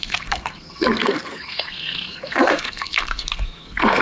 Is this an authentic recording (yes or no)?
no